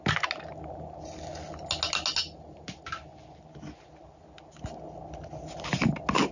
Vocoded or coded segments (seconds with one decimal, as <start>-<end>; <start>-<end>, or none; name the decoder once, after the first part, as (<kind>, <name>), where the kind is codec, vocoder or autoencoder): none